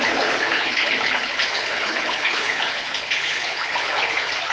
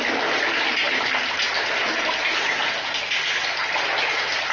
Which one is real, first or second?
second